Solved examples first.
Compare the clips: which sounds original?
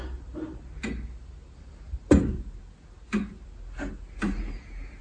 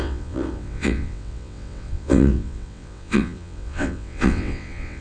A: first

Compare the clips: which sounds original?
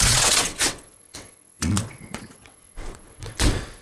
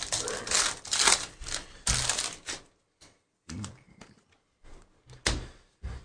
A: second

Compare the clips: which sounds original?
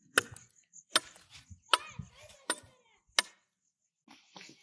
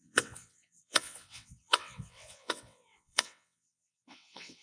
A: first